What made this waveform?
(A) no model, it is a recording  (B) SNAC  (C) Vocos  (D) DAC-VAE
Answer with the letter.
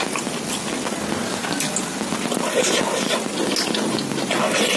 A